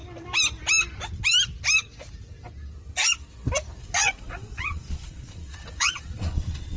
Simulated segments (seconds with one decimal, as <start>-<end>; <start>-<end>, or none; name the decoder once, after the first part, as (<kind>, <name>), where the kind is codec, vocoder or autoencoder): 3.8-6.8 (vocoder, Vocos)